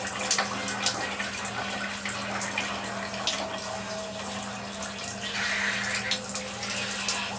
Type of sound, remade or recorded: recorded